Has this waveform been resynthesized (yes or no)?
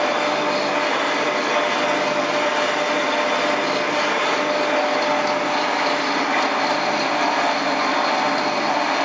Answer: no